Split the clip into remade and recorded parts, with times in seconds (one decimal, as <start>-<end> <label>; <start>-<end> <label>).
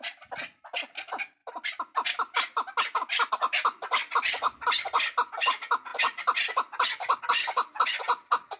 0.0-8.6 recorded